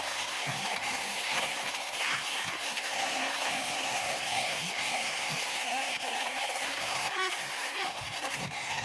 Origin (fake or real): fake